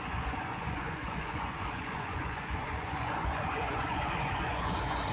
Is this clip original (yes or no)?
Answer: no